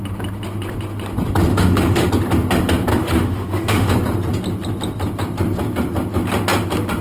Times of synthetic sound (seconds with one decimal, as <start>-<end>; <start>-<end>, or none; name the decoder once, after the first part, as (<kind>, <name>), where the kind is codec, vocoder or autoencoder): 1.5-2.1 (autoencoder, DAC-VAE); 2.9-3.9

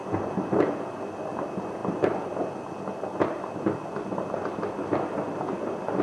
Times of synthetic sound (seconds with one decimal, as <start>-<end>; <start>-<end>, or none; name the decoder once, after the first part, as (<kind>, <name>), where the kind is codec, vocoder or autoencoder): none

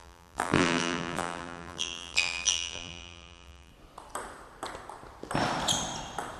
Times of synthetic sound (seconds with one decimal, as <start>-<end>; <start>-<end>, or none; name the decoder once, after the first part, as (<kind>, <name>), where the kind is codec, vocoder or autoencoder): 0.0-3.7 (vocoder, BigVGAN v2)

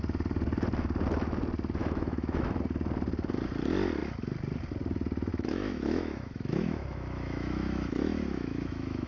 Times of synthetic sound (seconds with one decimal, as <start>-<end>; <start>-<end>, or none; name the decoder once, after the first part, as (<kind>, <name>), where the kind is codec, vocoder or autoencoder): 1.8-2.6 (autoencoder, DAC-VAE); 5.3-9.1

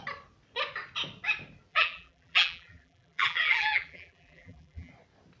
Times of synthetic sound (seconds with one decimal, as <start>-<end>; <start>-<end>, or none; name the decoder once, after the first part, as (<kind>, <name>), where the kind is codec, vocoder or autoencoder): 1.7-4.9 (vocoder, BigVGAN v2)

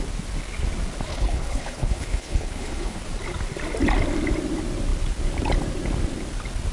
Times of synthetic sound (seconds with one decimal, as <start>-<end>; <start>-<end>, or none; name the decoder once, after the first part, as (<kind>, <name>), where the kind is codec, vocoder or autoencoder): 1.1-3.0 (codec, HILCodec)

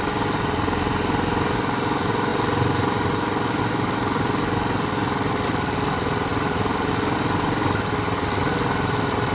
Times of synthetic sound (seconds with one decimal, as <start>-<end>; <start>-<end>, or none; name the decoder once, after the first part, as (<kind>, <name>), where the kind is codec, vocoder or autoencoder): none